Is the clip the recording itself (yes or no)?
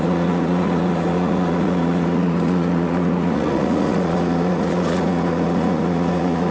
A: no